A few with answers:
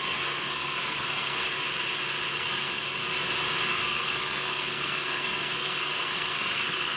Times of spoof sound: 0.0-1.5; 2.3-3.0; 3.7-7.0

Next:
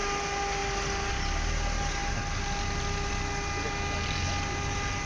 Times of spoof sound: none

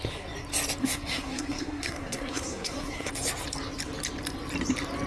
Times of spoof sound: 0.8-3.1

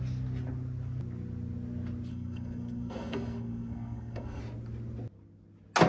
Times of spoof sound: 2.1-4.4

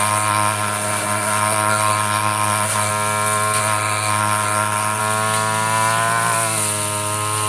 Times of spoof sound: 0.0-2.9; 3.6-5.0

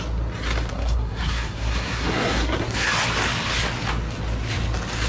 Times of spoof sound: 0.7-2.9

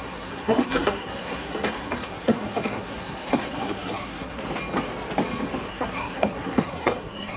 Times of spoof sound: 0.0-4.4; 5.7-7.4

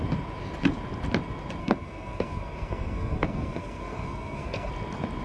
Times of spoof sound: 1.6-4.7